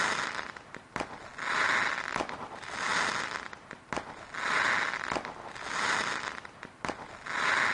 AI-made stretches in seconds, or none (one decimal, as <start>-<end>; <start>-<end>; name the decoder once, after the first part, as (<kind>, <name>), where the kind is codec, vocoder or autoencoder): none